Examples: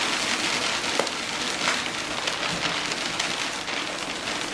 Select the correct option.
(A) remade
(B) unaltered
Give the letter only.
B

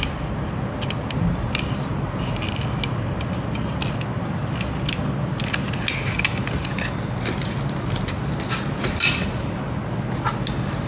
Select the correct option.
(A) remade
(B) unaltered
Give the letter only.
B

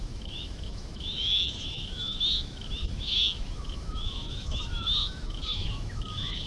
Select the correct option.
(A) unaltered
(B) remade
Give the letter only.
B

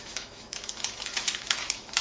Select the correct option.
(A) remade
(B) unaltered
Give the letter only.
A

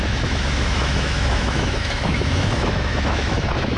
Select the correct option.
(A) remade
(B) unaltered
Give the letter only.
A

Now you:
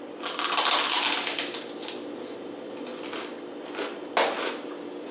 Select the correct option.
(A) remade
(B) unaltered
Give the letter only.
B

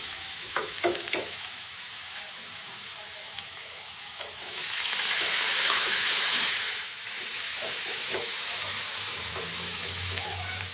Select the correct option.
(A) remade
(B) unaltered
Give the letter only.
A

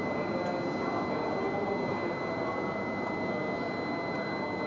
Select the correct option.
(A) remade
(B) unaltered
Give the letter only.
B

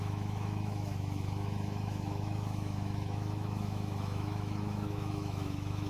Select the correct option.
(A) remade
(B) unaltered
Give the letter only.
A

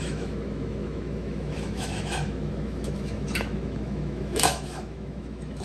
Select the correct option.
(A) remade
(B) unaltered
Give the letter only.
A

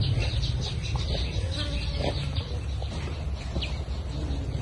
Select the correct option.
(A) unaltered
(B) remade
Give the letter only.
A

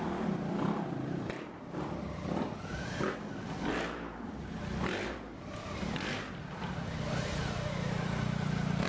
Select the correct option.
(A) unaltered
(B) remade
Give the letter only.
A